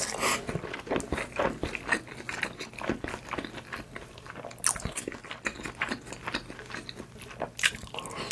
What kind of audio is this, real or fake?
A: real